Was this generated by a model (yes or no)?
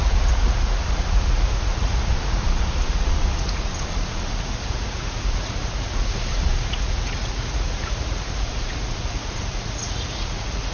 yes